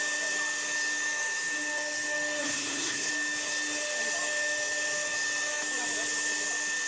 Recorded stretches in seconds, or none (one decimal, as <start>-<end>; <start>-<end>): 0.0-2.4; 3.1-6.9